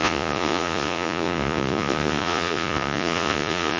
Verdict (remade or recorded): remade